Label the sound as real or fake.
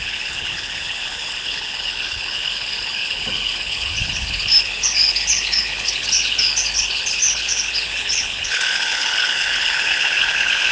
fake